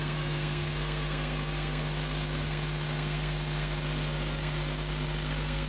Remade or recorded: remade